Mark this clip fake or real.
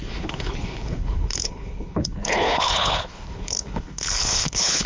fake